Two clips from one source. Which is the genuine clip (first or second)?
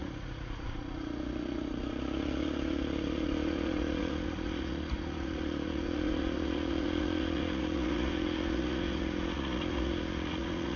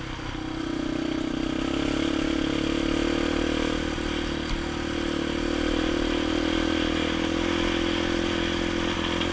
second